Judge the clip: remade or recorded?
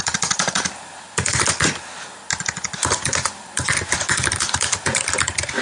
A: remade